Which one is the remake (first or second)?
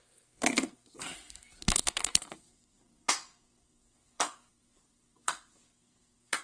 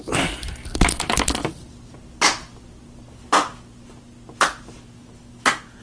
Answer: first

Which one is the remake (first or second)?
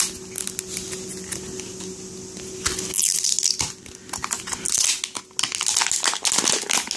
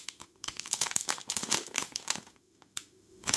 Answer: second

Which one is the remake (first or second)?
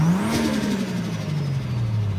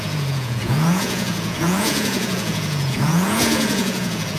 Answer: second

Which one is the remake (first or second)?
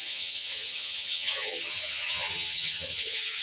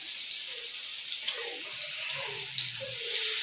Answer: first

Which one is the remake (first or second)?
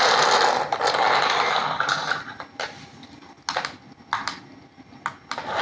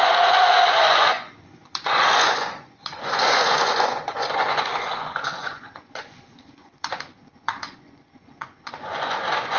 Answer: second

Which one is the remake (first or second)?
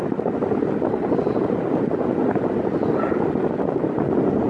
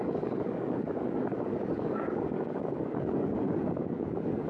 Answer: second